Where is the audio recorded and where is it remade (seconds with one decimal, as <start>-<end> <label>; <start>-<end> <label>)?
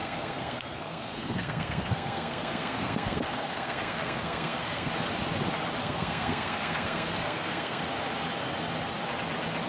0.0-4.9 remade; 4.9-5.8 recorded; 5.8-7.8 remade; 7.8-9.7 recorded